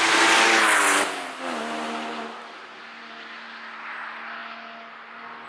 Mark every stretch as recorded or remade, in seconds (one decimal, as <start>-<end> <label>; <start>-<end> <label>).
0.0-5.5 recorded